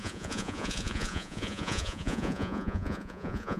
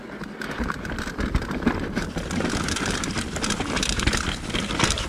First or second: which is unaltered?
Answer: second